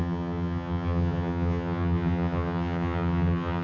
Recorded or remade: remade